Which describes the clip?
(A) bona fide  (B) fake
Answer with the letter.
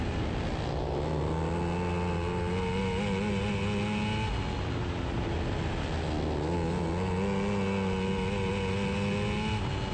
A